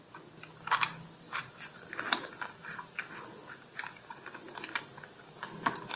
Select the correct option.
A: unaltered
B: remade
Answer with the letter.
A